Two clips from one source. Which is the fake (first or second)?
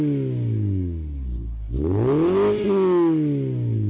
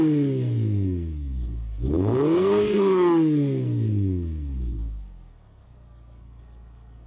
second